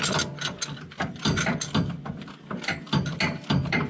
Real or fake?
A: real